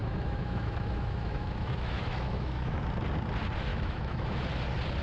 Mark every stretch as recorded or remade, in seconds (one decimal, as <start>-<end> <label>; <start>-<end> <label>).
0.0-2.8 remade; 2.8-3.7 recorded; 3.7-4.3 remade; 4.3-5.0 recorded